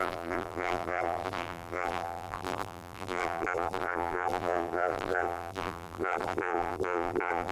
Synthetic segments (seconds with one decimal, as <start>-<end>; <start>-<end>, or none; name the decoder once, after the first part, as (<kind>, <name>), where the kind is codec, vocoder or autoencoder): 0.0-7.5 (vocoder, BigVGAN v2)